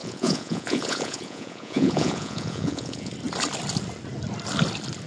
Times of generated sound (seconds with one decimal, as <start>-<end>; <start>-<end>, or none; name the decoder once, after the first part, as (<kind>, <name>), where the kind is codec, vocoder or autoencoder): 0.0-3.1 (vocoder, Vocos)